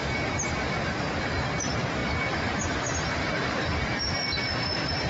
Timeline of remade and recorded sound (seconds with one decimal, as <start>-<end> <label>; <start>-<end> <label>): 0.0-5.1 recorded